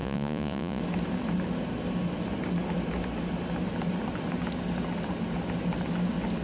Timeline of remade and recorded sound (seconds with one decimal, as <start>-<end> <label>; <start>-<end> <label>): 0.0-0.8 remade; 0.8-6.4 recorded